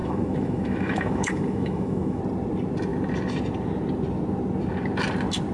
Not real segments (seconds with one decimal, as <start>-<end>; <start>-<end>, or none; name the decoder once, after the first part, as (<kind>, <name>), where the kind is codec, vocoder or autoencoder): 0.0-2.2 (autoencoder, DAC-VAE)